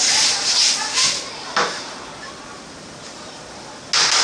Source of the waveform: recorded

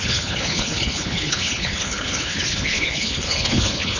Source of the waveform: remade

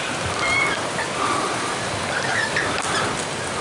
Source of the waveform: recorded